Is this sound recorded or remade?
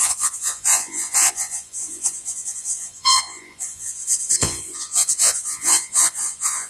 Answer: remade